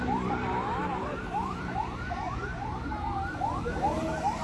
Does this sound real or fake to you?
fake